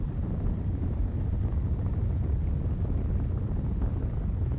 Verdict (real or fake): real